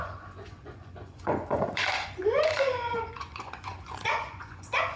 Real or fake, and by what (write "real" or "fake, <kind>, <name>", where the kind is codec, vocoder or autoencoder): fake, vocoder, Vocos